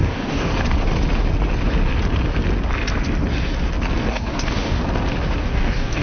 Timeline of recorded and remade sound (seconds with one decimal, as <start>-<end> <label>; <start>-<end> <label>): 0.0-0.5 remade; 0.5-4.1 recorded; 4.1-4.8 remade; 4.8-5.4 recorded; 5.4-6.0 remade